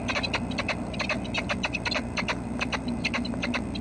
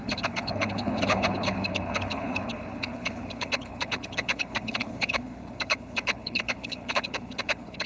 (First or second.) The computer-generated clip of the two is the second